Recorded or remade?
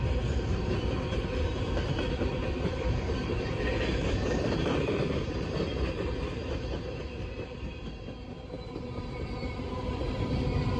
remade